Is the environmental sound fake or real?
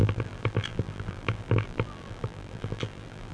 fake